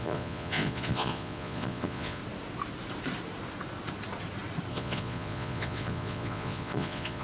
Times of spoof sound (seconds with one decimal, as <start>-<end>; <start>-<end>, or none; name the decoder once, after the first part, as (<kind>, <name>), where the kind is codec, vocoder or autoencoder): 0.0-2.2 (vocoder, Vocos); 4.7-7.2